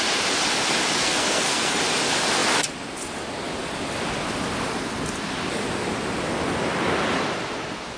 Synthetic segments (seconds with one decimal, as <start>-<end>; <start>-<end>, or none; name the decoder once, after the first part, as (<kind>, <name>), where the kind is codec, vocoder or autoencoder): 1.0-1.8 (codec, SNAC)